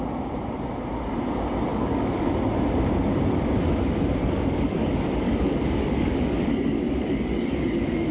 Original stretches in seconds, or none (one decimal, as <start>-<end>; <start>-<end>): 0.0-1.7; 2.4-4.2